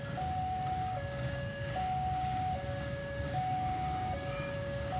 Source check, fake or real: fake